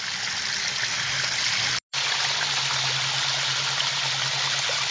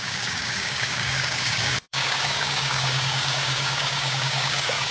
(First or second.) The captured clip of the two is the first